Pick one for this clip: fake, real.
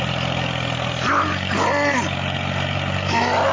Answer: real